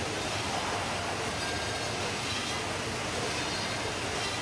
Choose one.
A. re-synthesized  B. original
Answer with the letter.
B